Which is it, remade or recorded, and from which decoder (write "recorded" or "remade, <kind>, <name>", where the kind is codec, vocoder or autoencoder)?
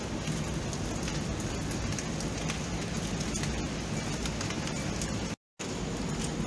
recorded